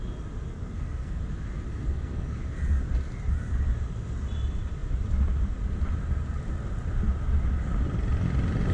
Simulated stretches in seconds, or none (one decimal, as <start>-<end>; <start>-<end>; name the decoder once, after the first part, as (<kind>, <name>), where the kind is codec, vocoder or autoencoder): 0.5-1.2 (codec, SNAC); 1.7-2.4